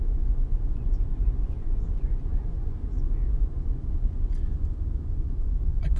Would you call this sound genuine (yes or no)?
no